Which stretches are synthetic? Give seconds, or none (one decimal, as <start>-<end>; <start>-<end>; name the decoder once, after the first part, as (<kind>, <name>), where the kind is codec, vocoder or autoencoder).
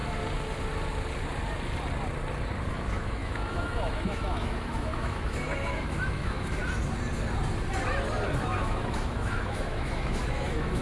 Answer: 2.7-6.6 (autoencoder, DAC-VAE); 8.4-10.8